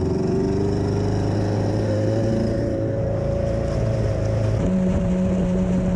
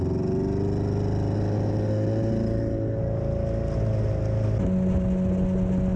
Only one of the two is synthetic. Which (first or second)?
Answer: first